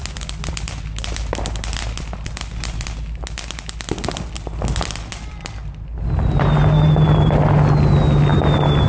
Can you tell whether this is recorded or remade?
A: recorded